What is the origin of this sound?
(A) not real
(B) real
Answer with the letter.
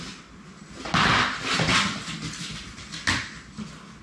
B